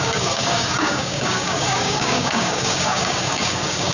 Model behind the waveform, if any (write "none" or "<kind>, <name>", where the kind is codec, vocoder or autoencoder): codec, DAC